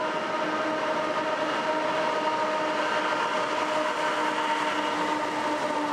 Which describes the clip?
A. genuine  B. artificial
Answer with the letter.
A